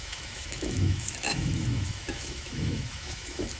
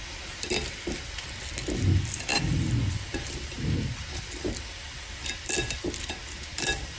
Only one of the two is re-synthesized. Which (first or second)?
first